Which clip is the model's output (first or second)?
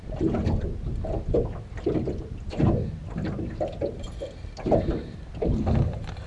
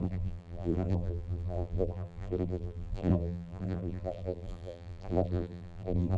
second